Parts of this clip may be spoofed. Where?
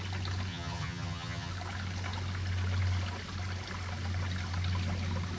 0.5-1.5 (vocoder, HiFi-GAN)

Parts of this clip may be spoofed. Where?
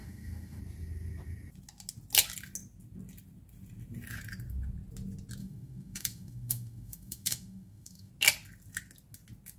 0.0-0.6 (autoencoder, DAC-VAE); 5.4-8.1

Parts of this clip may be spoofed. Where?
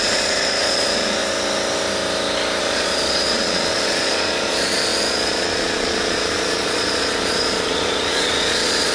0.0-1.2 (vocoder, Vocos); 2.6-8.9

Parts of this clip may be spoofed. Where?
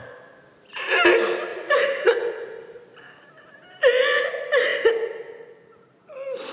1.5-2.8 (vocoder, Vocos)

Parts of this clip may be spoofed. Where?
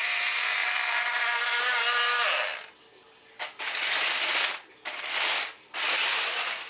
none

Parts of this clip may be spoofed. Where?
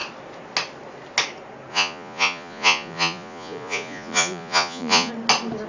1.7-5.1 (vocoder, Vocos)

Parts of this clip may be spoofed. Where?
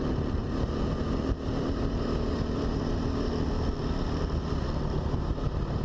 none